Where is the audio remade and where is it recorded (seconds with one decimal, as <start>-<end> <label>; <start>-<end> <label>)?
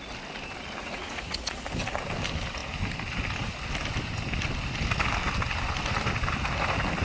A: 0.0-0.8 recorded; 0.8-1.6 remade; 1.6-7.0 recorded